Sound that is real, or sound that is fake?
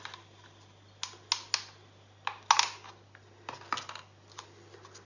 real